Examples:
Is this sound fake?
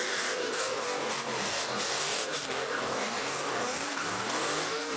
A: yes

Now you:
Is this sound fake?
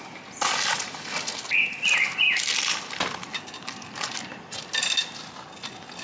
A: no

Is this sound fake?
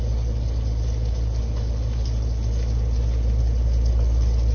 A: no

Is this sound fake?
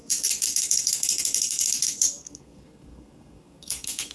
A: yes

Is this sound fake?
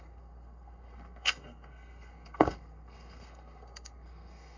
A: yes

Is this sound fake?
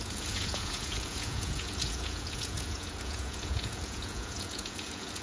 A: yes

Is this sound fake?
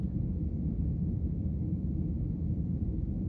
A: no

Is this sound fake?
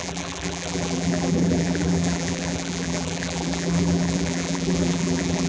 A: yes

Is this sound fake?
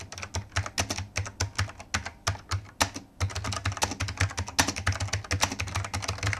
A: no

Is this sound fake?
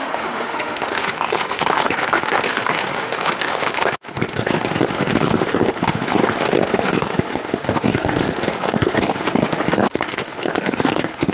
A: yes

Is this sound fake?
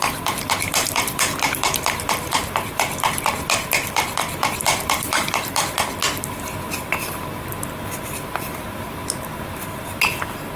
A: yes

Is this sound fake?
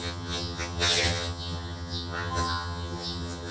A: yes